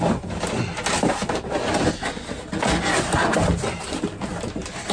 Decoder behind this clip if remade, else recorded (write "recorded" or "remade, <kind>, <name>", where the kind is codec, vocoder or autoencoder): recorded